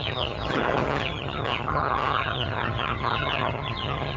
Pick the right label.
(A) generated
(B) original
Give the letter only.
A